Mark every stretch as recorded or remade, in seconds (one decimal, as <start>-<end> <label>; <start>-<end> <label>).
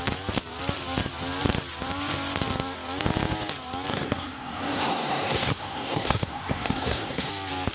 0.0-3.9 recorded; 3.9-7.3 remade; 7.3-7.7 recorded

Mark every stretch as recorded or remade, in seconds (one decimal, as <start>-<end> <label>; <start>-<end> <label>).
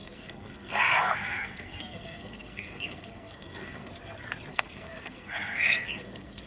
0.0-3.9 remade; 3.9-4.5 recorded; 4.5-6.5 remade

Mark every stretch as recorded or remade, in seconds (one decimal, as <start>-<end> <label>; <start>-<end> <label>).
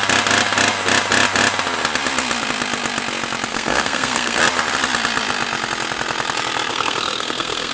0.0-3.5 recorded; 3.5-4.4 remade; 4.4-6.7 recorded; 6.7-7.7 remade